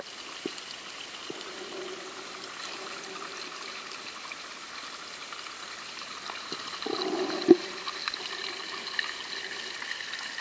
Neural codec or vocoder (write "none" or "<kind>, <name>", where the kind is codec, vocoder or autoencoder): none